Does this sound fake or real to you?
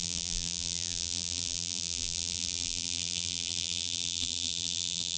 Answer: fake